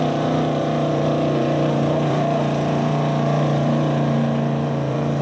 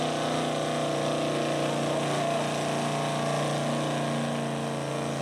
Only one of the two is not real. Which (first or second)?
first